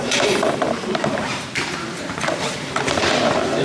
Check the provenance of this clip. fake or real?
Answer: fake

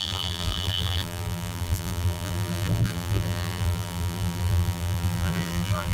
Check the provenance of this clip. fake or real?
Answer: fake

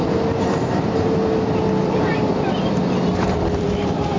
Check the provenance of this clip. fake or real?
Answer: fake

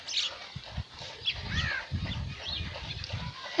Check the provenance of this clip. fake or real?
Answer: real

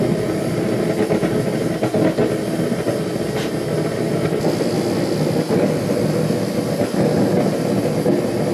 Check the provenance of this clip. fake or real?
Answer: real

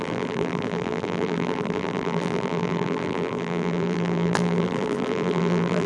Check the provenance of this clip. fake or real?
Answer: fake